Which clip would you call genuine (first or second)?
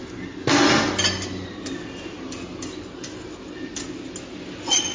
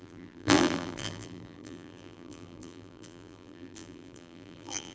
first